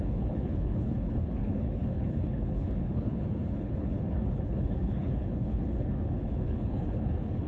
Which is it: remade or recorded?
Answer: remade